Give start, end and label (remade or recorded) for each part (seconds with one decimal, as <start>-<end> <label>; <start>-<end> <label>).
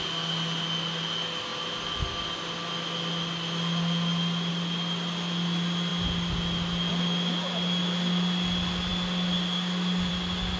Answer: 0.0-10.6 recorded